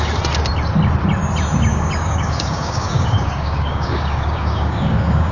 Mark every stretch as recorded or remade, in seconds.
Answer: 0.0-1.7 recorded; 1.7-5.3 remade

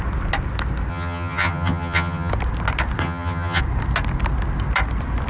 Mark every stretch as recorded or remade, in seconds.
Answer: 0.0-0.9 recorded; 0.9-2.3 remade; 2.3-3.0 recorded; 3.0-3.6 remade; 3.6-5.3 recorded

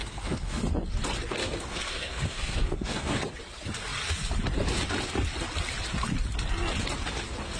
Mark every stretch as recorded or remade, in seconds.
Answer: 0.0-0.6 remade; 0.6-1.4 recorded; 1.4-3.2 remade; 3.2-7.6 recorded

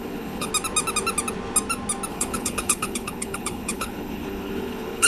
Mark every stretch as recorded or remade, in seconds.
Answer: 0.0-0.5 remade; 0.5-2.1 recorded; 2.1-5.1 remade

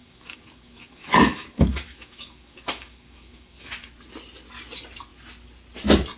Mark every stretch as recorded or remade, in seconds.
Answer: 0.0-3.7 remade; 3.7-6.2 recorded

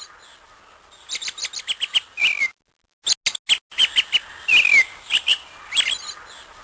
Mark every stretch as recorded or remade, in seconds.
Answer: 0.0-6.6 recorded

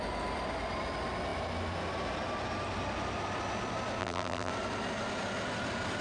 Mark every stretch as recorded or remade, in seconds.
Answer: 0.0-4.0 recorded; 4.0-4.5 remade; 4.5-6.0 recorded

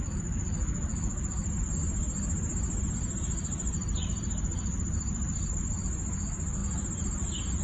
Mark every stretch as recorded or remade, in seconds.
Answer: 0.0-7.6 recorded